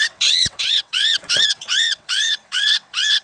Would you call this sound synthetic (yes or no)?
yes